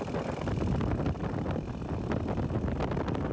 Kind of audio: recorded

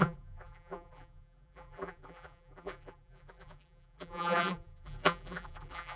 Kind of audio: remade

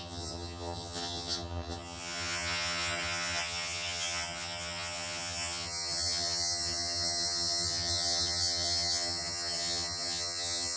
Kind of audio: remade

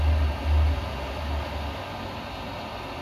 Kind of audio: recorded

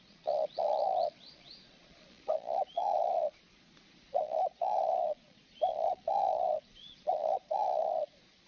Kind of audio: remade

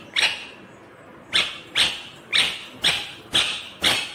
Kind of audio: recorded